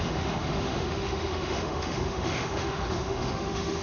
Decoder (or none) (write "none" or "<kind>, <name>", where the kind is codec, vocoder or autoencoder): autoencoder, DAC-VAE